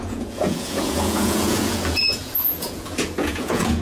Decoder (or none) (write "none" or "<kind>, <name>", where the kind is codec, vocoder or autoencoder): vocoder, Vocos